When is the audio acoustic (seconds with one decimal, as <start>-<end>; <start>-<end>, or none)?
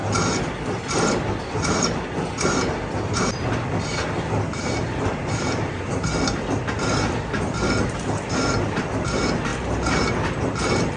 0.0-11.0